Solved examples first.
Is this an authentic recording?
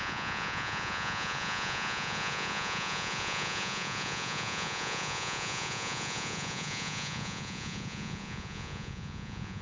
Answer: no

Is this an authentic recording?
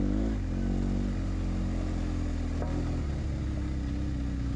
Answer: yes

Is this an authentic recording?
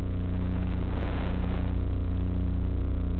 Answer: no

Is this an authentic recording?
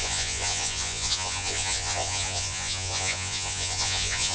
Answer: no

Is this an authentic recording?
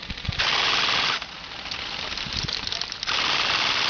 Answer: yes